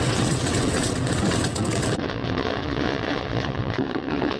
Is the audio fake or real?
fake